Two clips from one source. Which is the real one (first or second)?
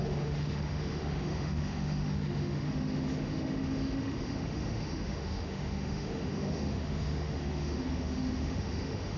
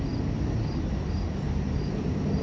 second